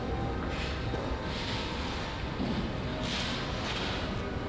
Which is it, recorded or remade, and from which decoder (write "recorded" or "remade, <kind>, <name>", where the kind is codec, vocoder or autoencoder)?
recorded